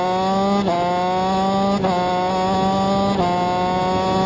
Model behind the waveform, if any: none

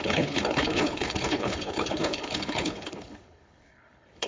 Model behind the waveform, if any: codec, HILCodec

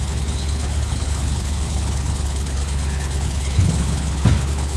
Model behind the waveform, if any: codec, HILCodec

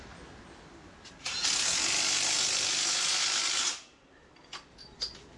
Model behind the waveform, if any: none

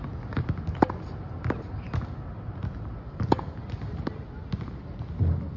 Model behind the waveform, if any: none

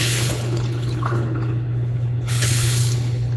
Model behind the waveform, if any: codec, HILCodec